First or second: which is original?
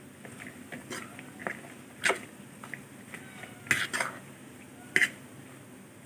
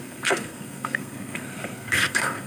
first